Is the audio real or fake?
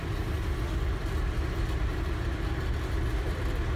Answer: real